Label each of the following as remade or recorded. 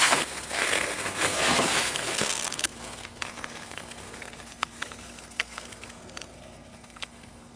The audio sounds remade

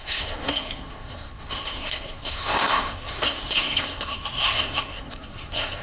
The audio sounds remade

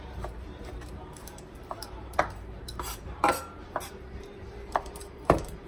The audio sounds remade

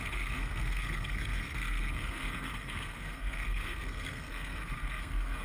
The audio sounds remade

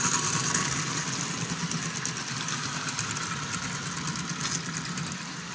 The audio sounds recorded